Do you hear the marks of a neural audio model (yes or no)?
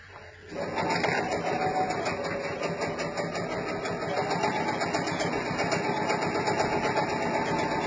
no